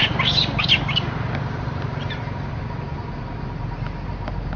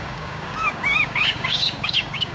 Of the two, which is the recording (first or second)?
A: first